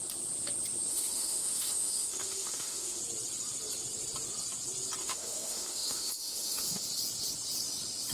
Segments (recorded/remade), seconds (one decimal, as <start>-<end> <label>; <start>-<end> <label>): 0.0-0.9 recorded; 0.9-3.0 remade; 3.0-5.0 recorded; 5.0-6.8 remade; 6.8-8.1 recorded